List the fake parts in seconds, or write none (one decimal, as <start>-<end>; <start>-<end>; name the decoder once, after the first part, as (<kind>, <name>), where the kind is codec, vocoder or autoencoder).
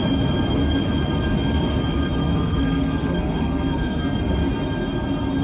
2.2-4.2 (codec, SNAC)